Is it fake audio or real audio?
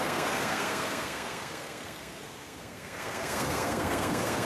fake